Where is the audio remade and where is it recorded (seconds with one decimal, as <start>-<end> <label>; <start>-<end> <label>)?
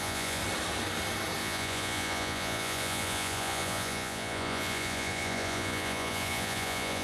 0.0-0.4 remade; 0.4-1.4 recorded; 1.4-7.0 remade